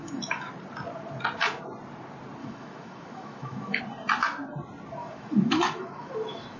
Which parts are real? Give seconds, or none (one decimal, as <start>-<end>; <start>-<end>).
0.5-2.4; 3.8-5.0